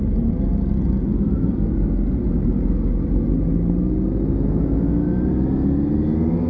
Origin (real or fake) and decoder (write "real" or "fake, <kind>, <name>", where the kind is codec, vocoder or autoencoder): real